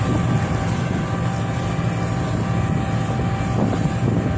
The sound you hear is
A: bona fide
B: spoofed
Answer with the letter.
A